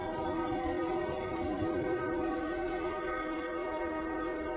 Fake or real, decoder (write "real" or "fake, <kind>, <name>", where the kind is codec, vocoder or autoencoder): fake, vocoder, Vocos